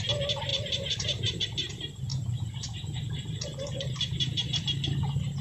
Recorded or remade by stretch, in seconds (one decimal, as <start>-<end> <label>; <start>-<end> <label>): 0.0-0.5 recorded; 0.5-1.4 remade; 1.4-2.1 recorded; 2.1-4.6 remade; 4.6-5.4 recorded